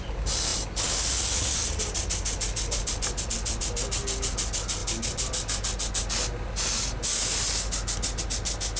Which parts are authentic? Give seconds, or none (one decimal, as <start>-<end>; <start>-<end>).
0.0-8.8